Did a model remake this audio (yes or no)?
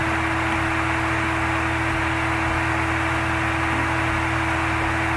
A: no